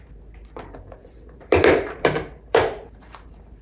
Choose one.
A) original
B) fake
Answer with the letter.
B